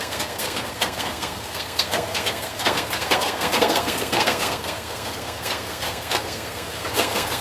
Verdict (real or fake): fake